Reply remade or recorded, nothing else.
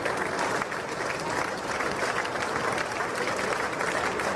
recorded